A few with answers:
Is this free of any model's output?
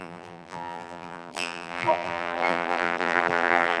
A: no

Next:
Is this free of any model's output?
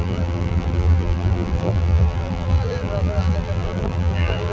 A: no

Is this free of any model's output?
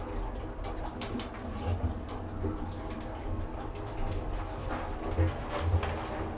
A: yes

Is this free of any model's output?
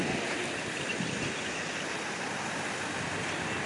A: yes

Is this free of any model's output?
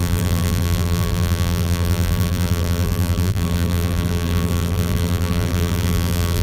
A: no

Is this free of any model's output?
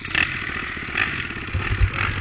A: yes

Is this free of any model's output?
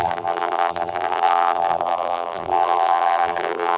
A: no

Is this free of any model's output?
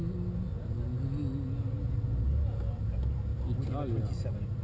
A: yes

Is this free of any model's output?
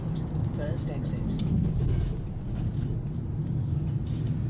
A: yes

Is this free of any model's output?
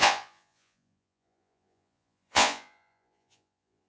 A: no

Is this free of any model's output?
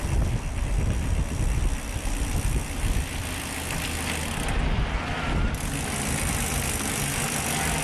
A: yes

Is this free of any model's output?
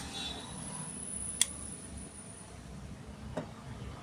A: yes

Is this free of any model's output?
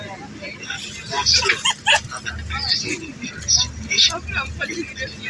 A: yes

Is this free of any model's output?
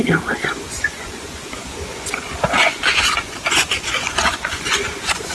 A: no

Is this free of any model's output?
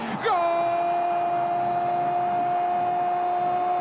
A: yes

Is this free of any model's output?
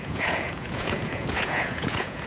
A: no